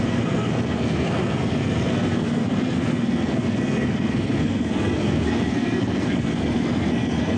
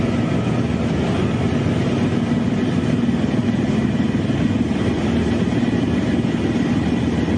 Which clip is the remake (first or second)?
first